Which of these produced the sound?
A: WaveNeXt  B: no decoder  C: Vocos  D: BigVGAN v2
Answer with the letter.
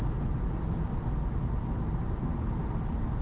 B